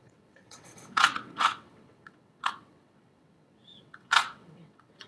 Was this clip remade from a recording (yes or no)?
yes